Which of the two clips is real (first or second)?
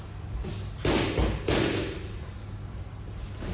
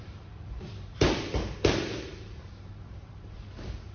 first